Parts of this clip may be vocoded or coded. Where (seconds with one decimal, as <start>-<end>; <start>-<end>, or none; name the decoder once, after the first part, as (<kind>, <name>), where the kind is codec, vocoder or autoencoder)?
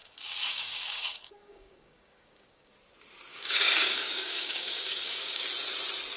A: 0.0-2.7 (codec, DAC); 3.3-5.4